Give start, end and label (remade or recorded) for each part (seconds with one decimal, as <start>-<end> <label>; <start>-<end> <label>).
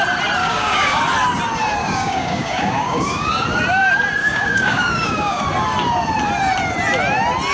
0.0-0.4 recorded; 0.4-1.0 remade; 1.0-1.8 recorded; 1.8-3.3 remade; 3.3-4.2 recorded; 4.2-5.4 remade; 5.4-7.5 recorded